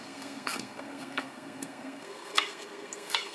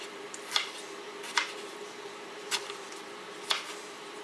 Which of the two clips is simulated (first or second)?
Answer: first